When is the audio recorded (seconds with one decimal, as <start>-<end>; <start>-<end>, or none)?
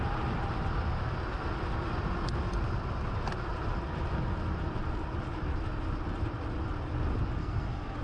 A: 0.0-7.4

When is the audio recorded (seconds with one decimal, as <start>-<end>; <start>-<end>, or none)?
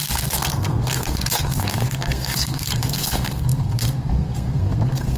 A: none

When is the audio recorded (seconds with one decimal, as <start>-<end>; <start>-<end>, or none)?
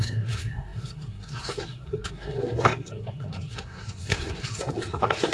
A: none